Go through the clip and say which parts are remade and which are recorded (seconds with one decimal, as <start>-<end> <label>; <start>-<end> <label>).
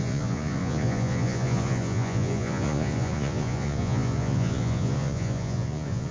0.0-6.1 remade